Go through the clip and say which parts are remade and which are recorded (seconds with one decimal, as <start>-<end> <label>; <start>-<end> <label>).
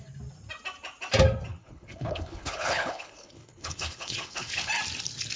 0.0-1.5 recorded; 1.5-4.7 remade; 4.7-5.4 recorded